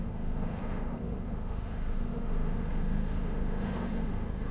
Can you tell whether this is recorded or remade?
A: remade